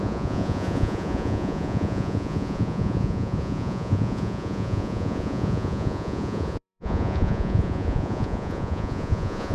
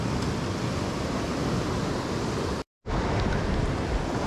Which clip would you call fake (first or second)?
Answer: first